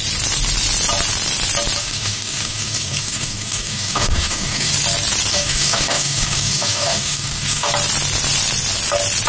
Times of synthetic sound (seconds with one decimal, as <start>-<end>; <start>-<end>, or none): 1.8-4.7; 5.3-7.7